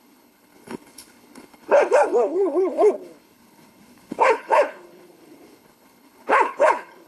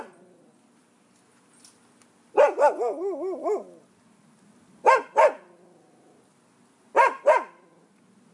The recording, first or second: second